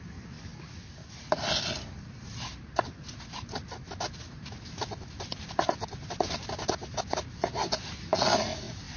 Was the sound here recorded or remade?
recorded